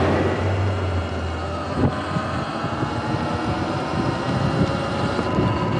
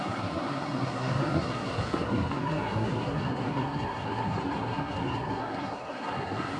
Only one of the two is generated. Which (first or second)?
second